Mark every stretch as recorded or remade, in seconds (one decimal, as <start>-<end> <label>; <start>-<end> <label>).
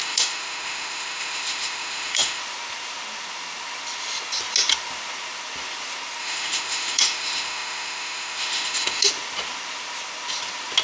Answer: 0.0-2.4 remade; 2.4-6.2 recorded; 6.2-9.1 remade; 9.1-10.8 recorded